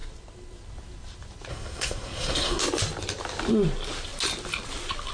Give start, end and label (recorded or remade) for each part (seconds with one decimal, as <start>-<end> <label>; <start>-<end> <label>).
0.0-1.5 recorded; 1.5-2.6 remade; 2.6-5.1 recorded